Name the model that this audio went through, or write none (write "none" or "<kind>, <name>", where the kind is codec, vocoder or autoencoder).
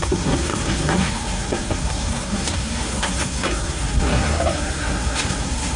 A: codec, SNAC